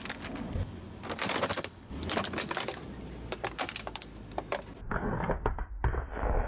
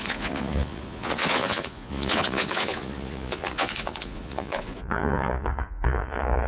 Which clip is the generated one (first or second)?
second